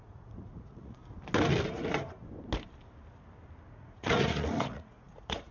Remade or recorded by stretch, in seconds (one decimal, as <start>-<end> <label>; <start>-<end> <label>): 0.0-1.0 remade; 1.0-3.7 recorded; 3.7-5.5 remade